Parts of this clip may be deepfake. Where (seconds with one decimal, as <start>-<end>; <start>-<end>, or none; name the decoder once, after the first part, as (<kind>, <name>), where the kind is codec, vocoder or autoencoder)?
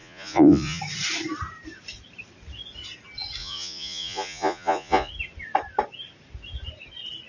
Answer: 0.0-0.8 (vocoder, Vocos); 3.4-5.1